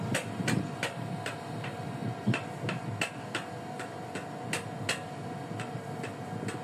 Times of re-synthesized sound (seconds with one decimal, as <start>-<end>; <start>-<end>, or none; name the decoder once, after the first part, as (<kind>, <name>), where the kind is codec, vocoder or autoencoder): none